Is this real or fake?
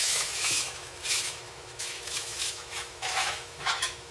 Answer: fake